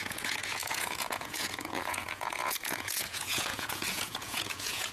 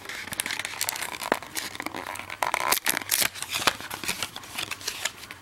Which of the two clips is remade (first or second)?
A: first